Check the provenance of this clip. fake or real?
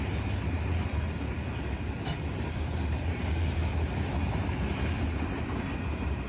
fake